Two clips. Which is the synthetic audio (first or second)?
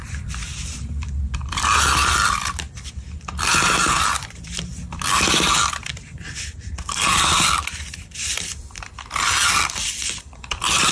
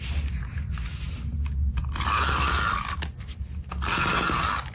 first